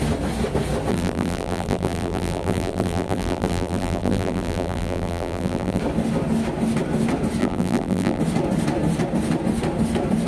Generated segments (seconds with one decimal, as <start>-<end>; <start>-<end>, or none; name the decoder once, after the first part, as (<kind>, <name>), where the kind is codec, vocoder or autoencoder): 0.9-5.8 (vocoder, BigVGAN v2); 7.4-8.2